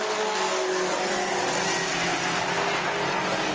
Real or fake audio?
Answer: real